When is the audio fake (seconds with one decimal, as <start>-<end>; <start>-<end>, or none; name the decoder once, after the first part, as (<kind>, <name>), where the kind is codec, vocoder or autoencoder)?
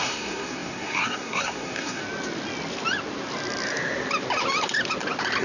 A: 0.0-2.0 (codec, SNAC)